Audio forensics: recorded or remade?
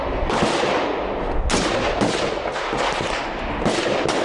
recorded